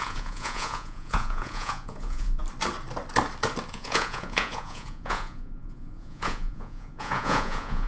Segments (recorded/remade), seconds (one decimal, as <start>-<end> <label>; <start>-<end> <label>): 0.0-2.4 remade; 2.4-3.7 recorded; 3.7-7.9 remade